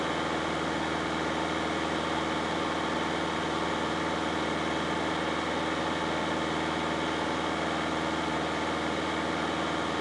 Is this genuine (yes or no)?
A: yes